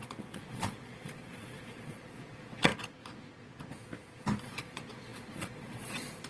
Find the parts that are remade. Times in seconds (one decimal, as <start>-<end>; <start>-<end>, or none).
0.0-2.7; 4.4-6.3